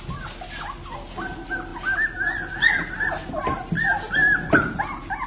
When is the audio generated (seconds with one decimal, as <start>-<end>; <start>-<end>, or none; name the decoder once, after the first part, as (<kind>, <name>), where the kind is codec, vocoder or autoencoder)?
none

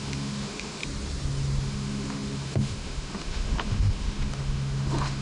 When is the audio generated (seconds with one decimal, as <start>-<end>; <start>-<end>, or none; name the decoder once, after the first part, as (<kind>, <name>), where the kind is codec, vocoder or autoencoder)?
0.0-0.8 (autoencoder, DAC-VAE); 1.6-5.2